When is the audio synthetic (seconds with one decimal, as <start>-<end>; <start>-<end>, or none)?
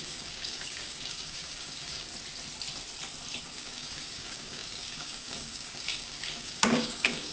0.0-2.1; 3.4-7.3